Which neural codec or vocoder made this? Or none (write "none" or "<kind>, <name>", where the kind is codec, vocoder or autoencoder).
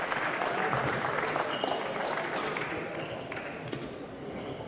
none